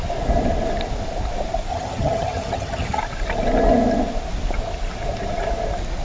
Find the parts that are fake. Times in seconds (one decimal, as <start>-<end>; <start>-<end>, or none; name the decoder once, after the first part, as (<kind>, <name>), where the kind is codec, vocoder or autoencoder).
1.7-3.0 (vocoder, HiFi-GAN)